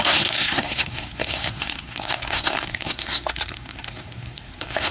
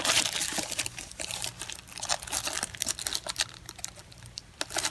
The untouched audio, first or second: second